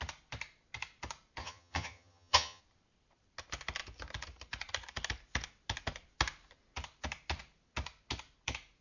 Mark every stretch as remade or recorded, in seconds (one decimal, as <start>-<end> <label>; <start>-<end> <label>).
0.0-1.4 recorded; 1.4-2.6 remade; 2.6-8.8 recorded